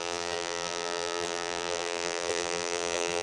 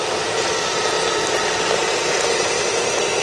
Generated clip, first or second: first